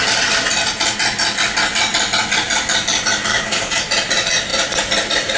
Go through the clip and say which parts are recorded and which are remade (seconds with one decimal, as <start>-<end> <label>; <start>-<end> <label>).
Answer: 0.0-3.3 recorded; 3.3-3.8 remade; 3.8-5.4 recorded